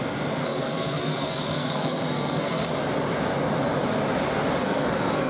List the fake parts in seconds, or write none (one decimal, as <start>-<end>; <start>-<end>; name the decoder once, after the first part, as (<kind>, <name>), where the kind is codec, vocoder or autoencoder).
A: 0.4-2.7 (codec, SNAC); 4.6-5.3